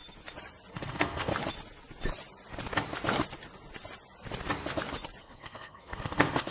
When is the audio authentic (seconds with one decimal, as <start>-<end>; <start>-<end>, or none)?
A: 0.0-0.7; 1.3-5.2